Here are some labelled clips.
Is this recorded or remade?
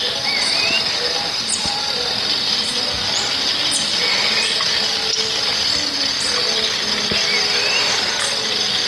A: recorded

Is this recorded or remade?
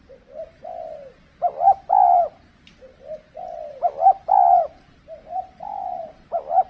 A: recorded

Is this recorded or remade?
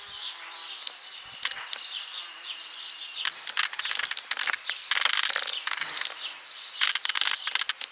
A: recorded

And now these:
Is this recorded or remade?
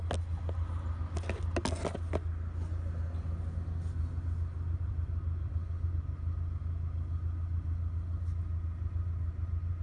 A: recorded